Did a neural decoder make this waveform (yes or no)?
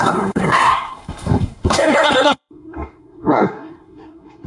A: yes